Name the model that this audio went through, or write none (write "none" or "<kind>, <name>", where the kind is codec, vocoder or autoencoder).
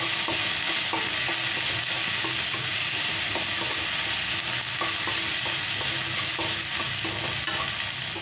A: none